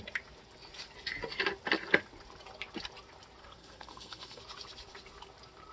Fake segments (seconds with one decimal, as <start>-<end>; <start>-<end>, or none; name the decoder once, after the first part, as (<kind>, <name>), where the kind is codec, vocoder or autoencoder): 3.4-4.4 (codec, SNAC)

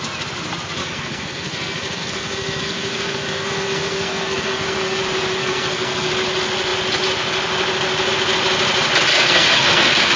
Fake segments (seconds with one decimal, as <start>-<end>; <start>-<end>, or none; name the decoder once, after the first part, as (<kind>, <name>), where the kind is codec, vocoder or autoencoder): 0.8-5.0 (codec, SNAC); 5.4-6.1; 9.1-10.2

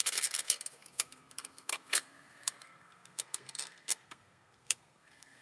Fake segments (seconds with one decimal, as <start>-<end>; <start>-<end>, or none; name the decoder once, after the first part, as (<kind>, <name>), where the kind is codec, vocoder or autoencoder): 0.0-5.4 (codec, SNAC)